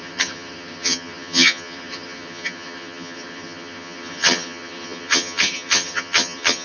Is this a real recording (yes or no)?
no